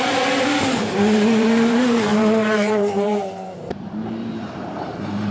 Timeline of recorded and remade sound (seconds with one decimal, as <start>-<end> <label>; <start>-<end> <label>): 0.0-5.3 remade